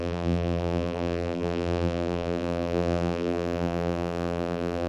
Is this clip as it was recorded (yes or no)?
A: no